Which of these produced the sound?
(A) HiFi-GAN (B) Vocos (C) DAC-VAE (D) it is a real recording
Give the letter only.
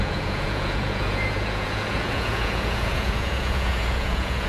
B